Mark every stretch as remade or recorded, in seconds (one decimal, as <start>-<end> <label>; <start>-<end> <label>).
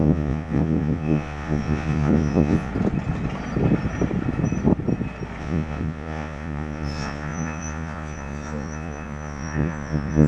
0.0-2.7 remade; 2.7-5.4 recorded; 5.4-10.3 remade